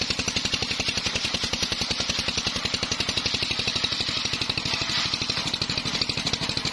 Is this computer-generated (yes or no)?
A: no